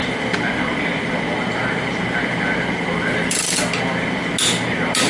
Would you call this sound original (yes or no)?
yes